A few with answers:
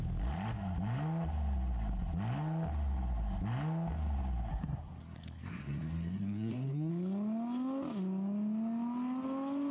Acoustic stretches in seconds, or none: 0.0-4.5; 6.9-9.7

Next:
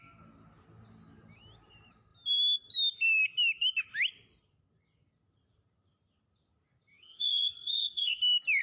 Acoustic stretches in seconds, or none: 0.0-6.9; 8.2-8.6

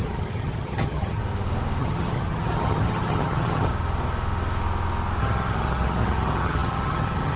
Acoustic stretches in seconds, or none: 1.2-1.8; 3.7-5.2

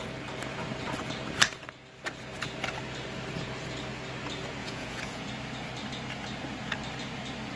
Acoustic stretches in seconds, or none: 0.0-4.6; 5.3-7.6